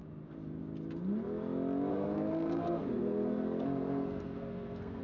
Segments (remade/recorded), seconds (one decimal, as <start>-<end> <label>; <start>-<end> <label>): 0.0-1.9 recorded; 1.9-5.0 remade